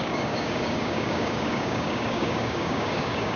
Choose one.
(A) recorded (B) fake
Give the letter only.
B